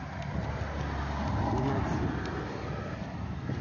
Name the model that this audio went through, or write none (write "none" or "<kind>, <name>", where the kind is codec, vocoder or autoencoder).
none